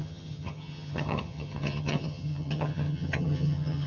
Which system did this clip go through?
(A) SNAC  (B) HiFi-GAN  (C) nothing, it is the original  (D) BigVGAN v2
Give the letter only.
B